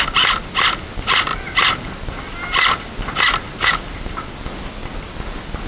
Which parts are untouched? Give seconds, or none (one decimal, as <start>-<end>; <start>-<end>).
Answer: 0.0-5.7